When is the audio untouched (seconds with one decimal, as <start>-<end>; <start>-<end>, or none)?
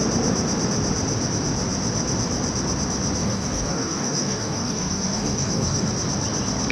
0.0-3.2; 5.9-6.7